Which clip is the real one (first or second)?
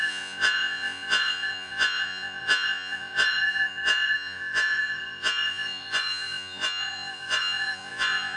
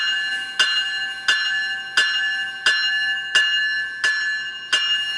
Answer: second